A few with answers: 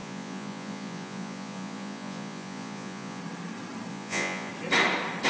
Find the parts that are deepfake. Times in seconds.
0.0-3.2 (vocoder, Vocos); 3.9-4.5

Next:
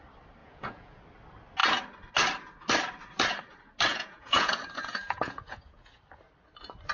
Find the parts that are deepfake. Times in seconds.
0.4-1.0 (vocoder, Vocos); 3.9-6.0

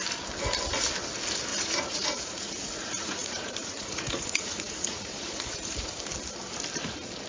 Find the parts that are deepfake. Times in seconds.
1.5-5.9 (vocoder, Vocos)

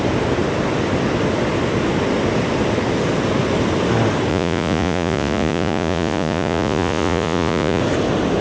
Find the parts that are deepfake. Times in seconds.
4.3-7.8 (vocoder, Vocos)